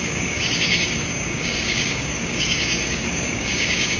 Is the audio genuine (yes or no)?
no